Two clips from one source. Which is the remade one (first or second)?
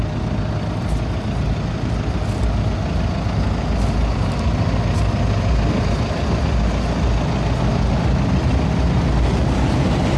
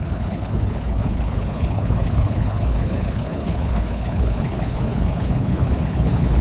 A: second